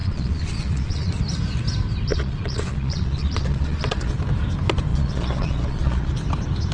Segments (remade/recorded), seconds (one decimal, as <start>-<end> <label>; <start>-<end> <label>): 0.0-1.1 remade; 1.1-2.1 recorded; 2.1-4.1 remade; 4.1-4.9 recorded; 4.9-6.1 remade; 6.1-6.7 recorded

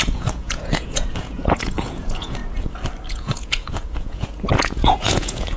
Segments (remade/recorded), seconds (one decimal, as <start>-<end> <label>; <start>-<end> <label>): 0.0-2.4 remade; 2.4-3.1 recorded; 3.1-5.6 remade

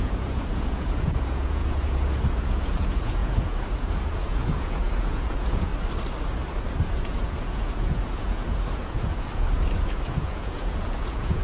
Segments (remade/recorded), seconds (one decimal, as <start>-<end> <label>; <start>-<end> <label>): 0.0-5.7 remade; 5.7-6.9 recorded; 6.9-11.4 remade